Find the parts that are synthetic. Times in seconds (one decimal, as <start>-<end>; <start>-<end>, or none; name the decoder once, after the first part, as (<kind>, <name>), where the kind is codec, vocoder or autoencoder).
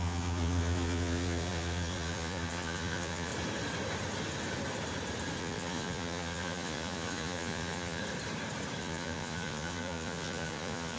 0.0-3.3 (vocoder, Vocos); 5.4-8.0; 8.8-11.0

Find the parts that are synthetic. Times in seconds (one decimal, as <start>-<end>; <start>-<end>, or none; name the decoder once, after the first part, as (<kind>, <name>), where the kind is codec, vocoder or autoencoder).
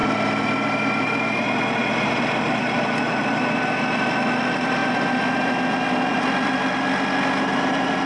none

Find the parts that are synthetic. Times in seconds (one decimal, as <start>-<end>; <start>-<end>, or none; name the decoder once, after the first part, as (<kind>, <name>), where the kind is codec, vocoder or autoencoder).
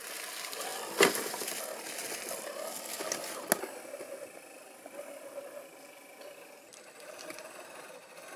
none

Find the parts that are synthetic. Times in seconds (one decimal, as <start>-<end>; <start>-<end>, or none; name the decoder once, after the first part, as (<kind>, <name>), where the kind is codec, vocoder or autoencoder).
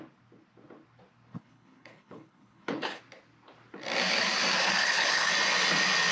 1.3-3.0 (codec, HILCodec); 4.6-5.3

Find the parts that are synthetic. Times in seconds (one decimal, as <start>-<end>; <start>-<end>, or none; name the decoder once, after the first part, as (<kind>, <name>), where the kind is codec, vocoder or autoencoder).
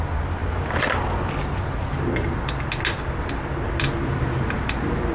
none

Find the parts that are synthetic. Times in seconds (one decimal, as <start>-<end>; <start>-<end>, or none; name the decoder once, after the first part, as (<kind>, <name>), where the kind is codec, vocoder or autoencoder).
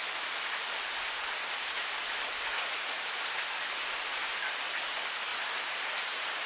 none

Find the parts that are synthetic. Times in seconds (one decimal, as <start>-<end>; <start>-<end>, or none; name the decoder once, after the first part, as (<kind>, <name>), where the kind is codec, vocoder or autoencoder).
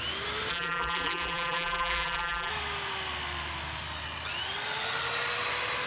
0.5-2.5 (vocoder, BigVGAN v2)